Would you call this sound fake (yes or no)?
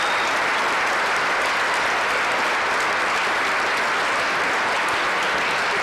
no